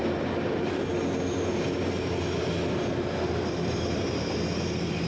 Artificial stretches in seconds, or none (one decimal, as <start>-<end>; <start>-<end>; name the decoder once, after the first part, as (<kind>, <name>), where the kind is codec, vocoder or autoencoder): 0.0-0.9 (vocoder, BigVGAN v2); 3.4-5.1